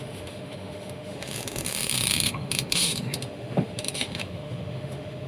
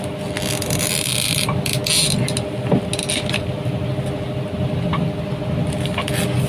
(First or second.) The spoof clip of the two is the first